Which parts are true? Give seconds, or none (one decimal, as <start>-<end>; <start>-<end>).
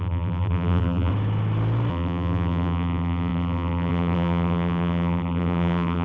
1.1-1.9